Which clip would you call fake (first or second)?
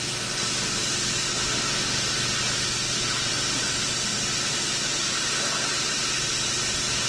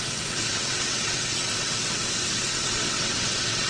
second